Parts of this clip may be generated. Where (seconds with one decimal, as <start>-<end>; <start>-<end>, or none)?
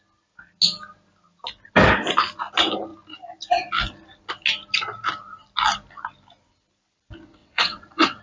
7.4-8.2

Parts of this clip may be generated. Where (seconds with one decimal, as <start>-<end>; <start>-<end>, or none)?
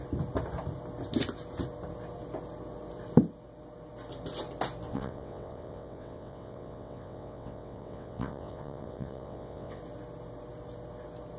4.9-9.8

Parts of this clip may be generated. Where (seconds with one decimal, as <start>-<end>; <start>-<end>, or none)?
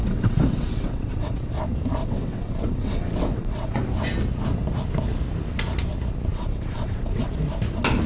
0.0-1.5; 2.0-3.8; 6.3-7.3